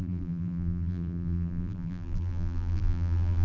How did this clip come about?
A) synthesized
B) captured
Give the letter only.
A